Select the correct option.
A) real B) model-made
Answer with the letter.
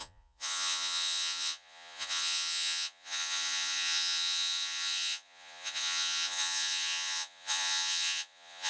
B